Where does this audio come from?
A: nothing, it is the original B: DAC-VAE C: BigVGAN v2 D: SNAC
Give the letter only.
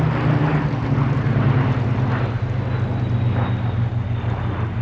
A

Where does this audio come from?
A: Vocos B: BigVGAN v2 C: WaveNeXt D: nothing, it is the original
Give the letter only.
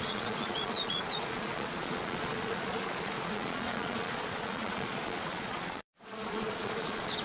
A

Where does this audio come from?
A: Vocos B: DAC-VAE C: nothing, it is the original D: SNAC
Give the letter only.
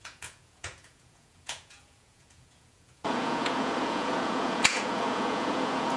A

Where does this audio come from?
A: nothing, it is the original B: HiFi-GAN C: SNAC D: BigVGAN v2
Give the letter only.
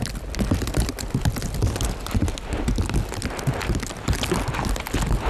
A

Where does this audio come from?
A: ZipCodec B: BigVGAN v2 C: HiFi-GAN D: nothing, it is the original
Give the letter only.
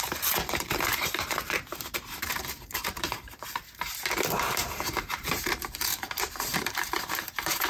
B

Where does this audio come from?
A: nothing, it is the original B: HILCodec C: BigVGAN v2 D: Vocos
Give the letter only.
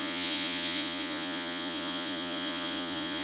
D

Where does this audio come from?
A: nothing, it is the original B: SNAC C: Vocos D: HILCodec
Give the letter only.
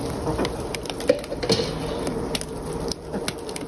A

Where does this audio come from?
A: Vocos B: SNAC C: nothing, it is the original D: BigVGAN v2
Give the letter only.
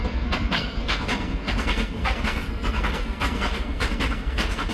B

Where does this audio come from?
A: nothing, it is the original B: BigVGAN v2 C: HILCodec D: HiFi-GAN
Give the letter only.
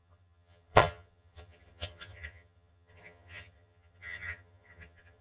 D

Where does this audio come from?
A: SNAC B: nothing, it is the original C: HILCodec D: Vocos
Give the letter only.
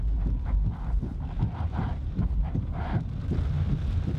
B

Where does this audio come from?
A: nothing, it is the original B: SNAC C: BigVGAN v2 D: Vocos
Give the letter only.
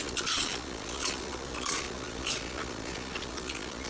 D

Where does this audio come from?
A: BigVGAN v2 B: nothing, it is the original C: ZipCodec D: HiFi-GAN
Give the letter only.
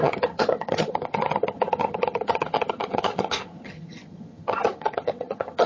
D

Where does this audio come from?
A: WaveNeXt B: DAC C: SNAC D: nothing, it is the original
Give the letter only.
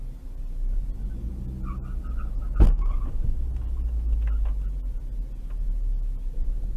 D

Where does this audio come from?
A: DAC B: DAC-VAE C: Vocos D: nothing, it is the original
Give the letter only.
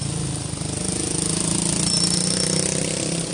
D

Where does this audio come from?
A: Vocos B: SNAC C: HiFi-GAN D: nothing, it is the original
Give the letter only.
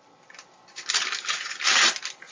D